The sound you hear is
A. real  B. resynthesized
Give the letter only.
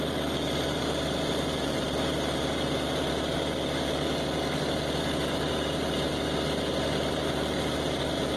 B